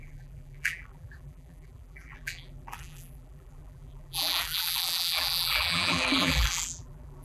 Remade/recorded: remade